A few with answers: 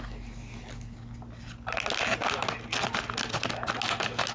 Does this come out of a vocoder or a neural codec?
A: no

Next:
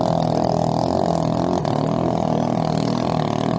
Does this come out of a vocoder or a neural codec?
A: no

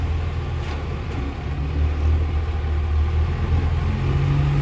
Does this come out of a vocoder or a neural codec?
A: no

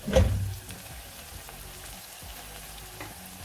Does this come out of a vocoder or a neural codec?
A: no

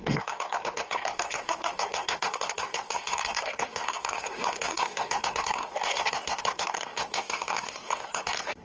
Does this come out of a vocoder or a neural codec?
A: yes